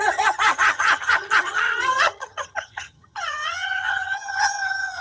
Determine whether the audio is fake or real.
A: fake